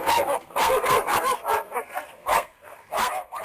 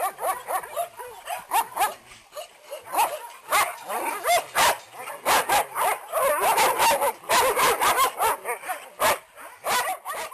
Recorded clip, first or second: second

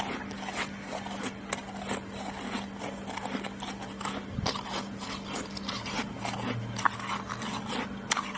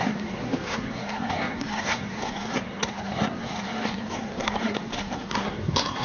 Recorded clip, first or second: first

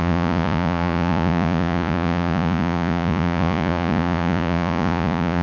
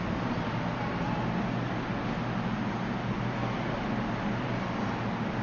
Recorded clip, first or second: second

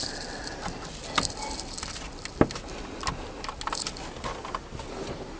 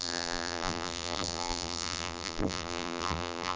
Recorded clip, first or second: first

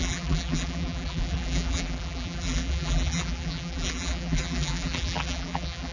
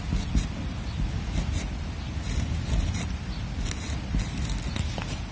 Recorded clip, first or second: second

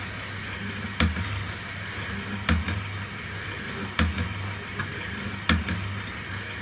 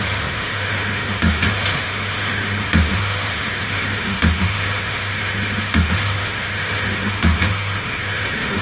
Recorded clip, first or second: first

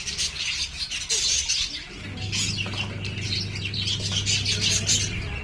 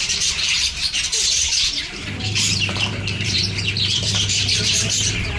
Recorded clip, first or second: first